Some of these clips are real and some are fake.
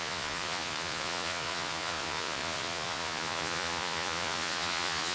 fake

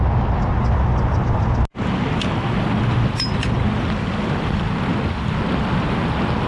real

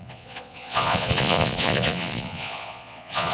fake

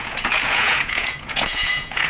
fake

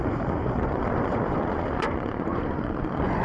fake